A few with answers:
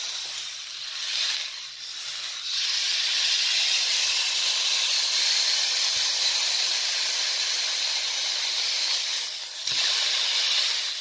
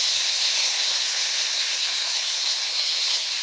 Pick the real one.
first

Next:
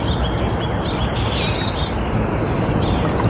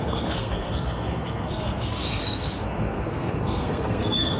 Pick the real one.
first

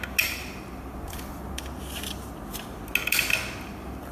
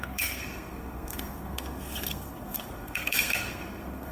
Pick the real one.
first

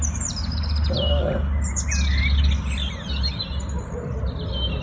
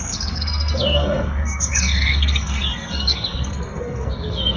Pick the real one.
first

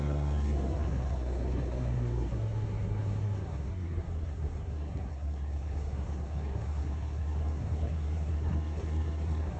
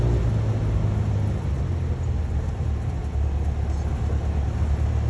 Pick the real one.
second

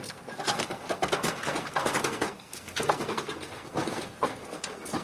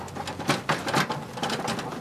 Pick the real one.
second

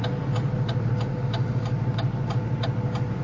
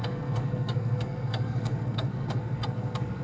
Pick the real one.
first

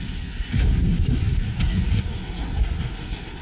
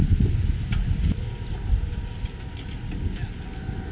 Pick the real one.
second